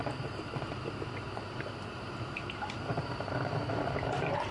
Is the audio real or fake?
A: fake